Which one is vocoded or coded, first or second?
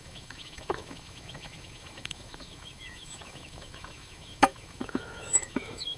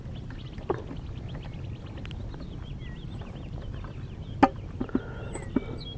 first